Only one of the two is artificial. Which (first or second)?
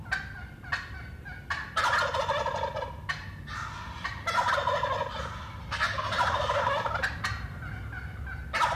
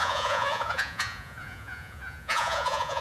second